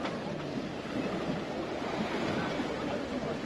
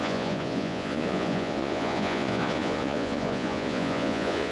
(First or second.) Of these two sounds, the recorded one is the first